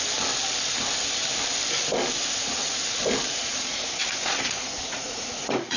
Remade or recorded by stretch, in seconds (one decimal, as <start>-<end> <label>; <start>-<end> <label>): 0.0-2.4 recorded; 2.4-3.0 remade; 3.0-3.4 recorded; 3.4-5.8 remade